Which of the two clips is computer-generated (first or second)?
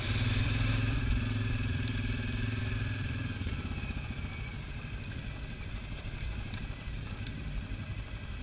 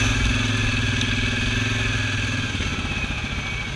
first